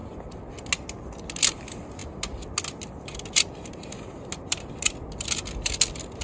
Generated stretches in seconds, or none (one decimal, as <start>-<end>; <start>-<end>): none